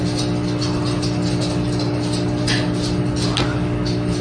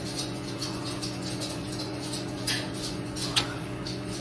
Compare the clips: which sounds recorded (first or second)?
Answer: first